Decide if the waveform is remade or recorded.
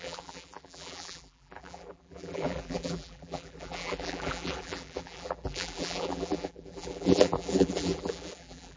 remade